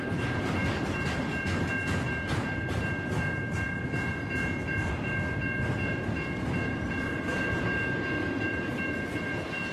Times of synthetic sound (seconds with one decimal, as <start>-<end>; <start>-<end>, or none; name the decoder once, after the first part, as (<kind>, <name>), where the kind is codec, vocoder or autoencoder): 7.3-9.7 (vocoder, BigVGAN v2)